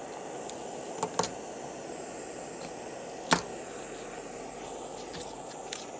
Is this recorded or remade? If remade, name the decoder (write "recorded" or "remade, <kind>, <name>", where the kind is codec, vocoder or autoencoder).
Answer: recorded